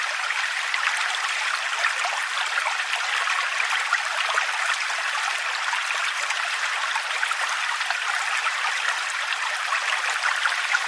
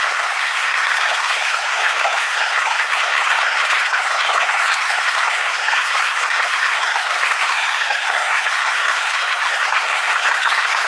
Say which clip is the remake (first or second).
second